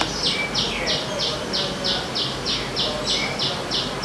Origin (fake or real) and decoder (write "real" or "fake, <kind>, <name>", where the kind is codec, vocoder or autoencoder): real